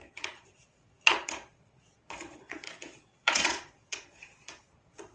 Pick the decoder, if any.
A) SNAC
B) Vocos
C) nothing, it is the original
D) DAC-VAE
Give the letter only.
B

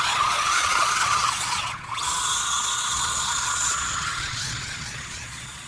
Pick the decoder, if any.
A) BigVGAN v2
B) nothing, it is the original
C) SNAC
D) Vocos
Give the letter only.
D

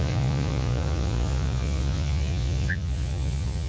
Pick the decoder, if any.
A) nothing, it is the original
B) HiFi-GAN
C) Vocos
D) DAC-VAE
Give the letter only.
C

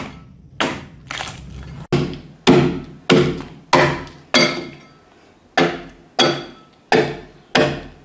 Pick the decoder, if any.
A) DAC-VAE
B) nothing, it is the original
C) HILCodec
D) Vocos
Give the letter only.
B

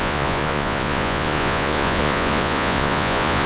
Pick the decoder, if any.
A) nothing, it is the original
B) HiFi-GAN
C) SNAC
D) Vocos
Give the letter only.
D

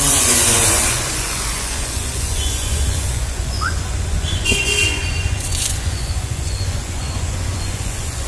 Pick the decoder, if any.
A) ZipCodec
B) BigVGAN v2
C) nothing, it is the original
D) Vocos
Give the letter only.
D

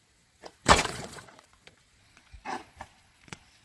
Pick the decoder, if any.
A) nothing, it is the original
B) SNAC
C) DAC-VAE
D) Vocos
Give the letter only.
D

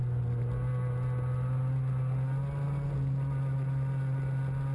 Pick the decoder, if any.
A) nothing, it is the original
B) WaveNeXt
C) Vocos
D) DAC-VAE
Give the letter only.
A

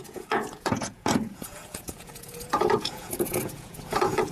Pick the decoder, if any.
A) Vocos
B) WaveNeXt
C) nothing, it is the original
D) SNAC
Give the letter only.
A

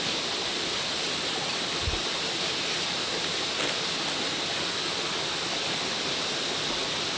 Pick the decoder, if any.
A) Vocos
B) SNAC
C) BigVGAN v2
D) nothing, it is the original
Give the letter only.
D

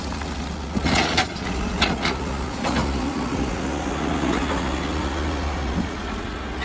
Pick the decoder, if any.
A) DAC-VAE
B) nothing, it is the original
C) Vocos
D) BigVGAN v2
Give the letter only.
C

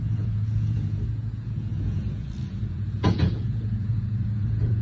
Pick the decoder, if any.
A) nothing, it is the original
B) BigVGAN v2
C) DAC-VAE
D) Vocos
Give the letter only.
D